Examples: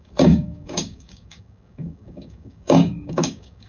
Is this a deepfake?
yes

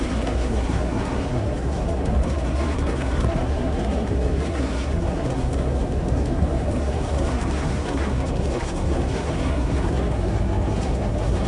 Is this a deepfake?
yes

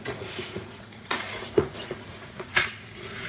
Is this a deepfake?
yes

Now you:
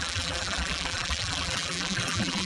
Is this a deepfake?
yes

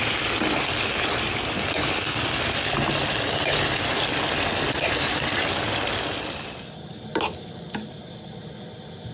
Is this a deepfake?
no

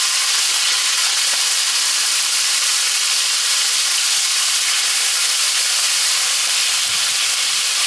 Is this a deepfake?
yes